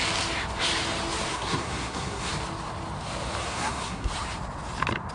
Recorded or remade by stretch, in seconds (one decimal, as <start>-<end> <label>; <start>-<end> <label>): 0.0-1.3 recorded; 1.3-2.3 remade; 2.3-3.4 recorded; 3.4-4.1 remade; 4.1-5.1 recorded